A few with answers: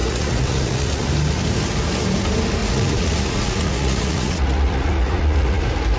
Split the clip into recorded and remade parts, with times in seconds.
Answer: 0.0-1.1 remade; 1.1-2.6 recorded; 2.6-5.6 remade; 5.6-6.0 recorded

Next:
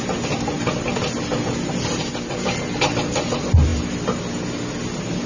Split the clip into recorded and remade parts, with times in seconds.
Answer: 0.0-5.3 recorded

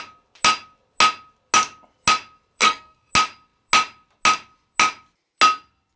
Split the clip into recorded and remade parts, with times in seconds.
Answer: 0.0-2.6 recorded; 2.6-3.1 remade; 3.1-6.0 recorded

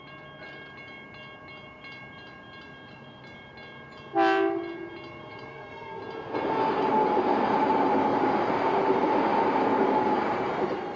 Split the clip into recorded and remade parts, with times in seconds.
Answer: 0.0-5.5 recorded; 5.5-6.0 remade; 6.0-11.0 recorded

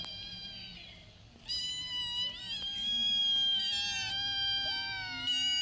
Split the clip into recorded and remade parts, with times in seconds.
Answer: 0.0-5.6 recorded